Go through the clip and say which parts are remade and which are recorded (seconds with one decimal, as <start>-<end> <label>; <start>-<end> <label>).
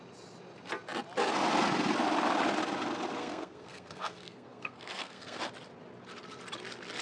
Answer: 0.0-3.2 recorded; 3.2-5.4 remade; 5.4-7.0 recorded